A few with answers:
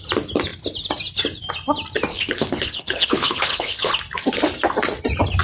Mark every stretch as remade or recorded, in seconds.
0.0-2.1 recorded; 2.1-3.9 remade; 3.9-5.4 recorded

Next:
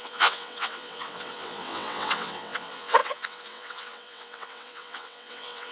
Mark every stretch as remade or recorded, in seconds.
0.0-5.7 remade

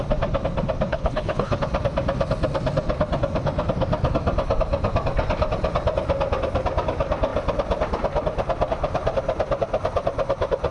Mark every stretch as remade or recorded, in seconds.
0.0-0.9 recorded; 0.9-1.6 remade; 1.6-10.7 recorded

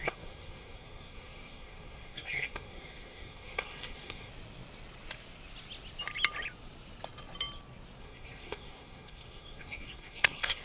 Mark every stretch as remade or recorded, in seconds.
0.0-4.3 remade; 4.3-8.0 recorded; 8.0-10.6 remade

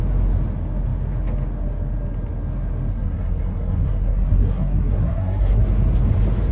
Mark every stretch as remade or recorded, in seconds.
0.0-2.9 recorded; 2.9-5.6 remade; 5.6-6.5 recorded

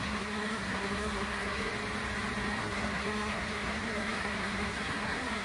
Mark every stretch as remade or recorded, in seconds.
0.0-1.7 remade; 1.7-2.5 recorded; 2.5-5.4 remade